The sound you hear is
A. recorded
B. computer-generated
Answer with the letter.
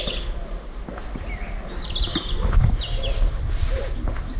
A